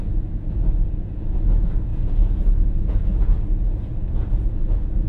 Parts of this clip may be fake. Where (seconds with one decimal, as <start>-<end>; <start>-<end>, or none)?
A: 0.0-5.1